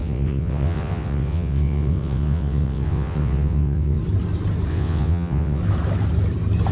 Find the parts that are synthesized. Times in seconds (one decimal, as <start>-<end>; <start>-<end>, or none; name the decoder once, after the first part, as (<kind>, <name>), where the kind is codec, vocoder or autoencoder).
0.0-4.0 (vocoder, WaveNeXt); 4.7-5.6